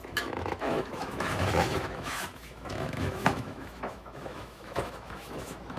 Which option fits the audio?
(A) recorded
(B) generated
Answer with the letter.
B